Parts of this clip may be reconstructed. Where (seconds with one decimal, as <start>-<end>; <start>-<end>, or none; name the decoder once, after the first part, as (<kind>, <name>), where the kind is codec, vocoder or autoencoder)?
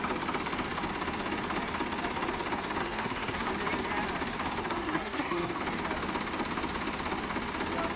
2.8-3.5 (codec, SNAC); 4.6-5.6